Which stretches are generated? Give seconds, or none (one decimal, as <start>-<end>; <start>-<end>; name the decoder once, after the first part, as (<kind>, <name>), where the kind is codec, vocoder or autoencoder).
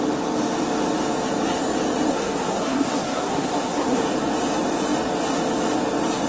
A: 2.1-4.0 (codec, SNAC)